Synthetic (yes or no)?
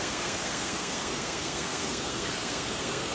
yes